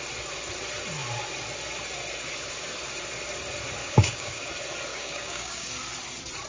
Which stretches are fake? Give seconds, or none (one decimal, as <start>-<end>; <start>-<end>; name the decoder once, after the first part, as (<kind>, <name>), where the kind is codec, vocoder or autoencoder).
3.8-4.5 (codec, DAC); 4.9-5.7